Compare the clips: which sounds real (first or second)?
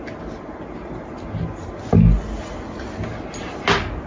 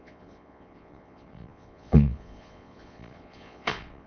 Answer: first